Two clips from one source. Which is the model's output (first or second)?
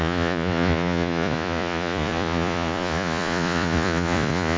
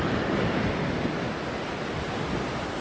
first